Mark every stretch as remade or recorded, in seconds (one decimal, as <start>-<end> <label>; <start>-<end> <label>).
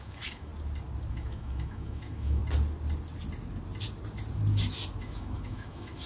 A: 0.0-0.5 remade; 0.5-1.1 recorded; 1.1-2.4 remade; 2.4-5.0 recorded; 5.0-6.1 remade